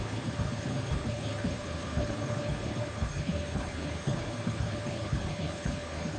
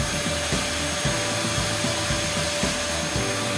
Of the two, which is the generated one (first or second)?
first